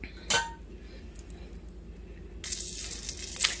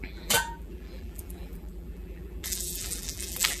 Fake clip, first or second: second